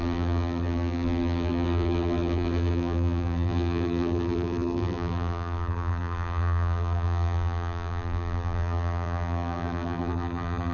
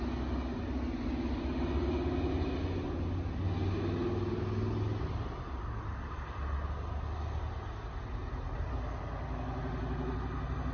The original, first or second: second